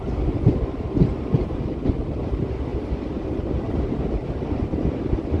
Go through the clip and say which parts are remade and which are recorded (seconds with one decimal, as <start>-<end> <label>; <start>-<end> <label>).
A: 0.0-5.4 recorded